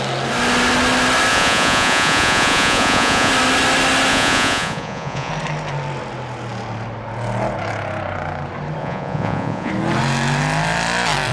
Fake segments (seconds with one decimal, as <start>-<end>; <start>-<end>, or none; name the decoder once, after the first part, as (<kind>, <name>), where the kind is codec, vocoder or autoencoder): 1.3-3.3 (vocoder, Vocos); 4.1-5.3; 8.8-9.7